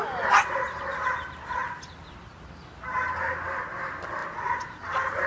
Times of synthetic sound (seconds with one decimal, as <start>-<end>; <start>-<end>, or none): none